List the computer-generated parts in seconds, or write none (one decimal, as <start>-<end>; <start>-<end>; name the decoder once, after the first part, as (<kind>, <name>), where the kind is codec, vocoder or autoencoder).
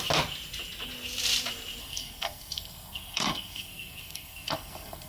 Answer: 1.8-5.1 (codec, SNAC)